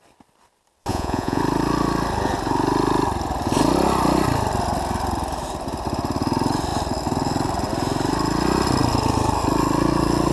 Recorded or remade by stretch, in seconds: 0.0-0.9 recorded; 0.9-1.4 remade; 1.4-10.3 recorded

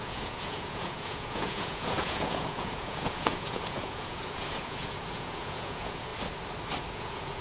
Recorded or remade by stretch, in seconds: 0.0-6.1 remade; 6.1-6.9 recorded; 6.9-7.4 remade

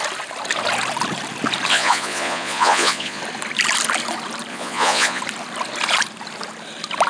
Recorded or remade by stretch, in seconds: 0.0-1.7 recorded; 1.7-3.2 remade; 3.2-4.5 recorded; 4.5-5.2 remade; 5.2-7.1 recorded

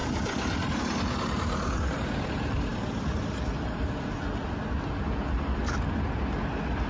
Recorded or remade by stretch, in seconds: 0.0-6.9 recorded

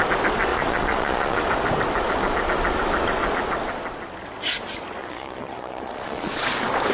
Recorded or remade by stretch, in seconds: 0.0-0.5 recorded; 0.5-1.4 remade; 1.4-5.0 recorded; 5.0-6.5 remade; 6.5-6.9 recorded

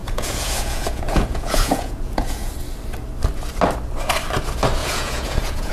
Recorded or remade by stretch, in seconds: 0.0-2.5 remade; 2.5-4.8 recorded; 4.8-5.7 remade

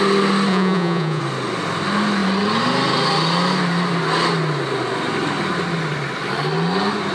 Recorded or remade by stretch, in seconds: 0.0-0.5 recorded; 0.5-1.2 remade; 1.2-7.1 recorded

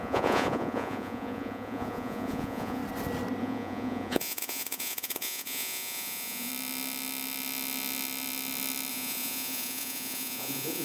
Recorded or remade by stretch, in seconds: 0.0-2.8 remade; 2.8-3.4 recorded; 3.4-6.5 remade; 6.5-8.9 recorded; 8.9-10.8 remade